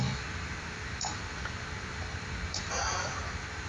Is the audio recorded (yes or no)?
yes